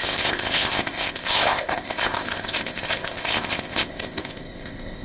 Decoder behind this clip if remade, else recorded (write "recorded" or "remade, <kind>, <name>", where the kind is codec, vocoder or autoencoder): remade, codec, ZipCodec